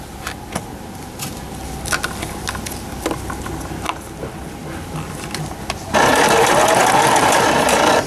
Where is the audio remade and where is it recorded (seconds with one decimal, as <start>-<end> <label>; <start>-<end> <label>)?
0.0-1.6 remade; 1.6-4.4 recorded; 4.4-8.1 remade